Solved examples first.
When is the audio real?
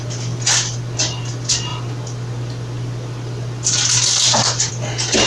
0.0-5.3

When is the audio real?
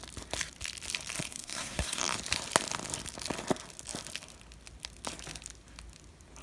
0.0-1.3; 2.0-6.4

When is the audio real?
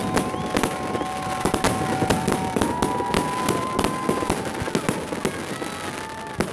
0.0-6.5